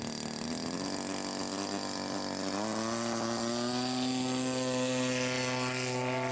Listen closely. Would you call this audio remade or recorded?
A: recorded